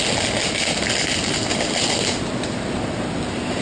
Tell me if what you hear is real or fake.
real